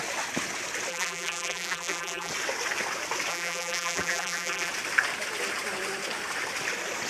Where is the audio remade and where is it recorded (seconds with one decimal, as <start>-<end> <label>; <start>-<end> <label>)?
0.0-0.9 recorded; 0.9-2.3 remade; 2.3-3.3 recorded; 3.3-4.7 remade; 4.7-7.1 recorded